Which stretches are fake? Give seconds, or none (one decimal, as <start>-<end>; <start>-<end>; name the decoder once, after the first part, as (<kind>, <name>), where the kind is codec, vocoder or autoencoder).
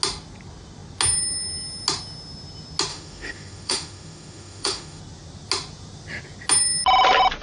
2.9-5.0 (autoencoder, DAC-VAE)